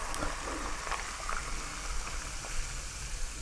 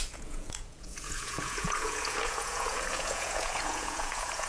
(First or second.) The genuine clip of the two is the first